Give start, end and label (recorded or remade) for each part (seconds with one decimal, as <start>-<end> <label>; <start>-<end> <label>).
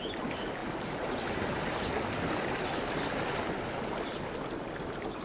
0.0-5.2 recorded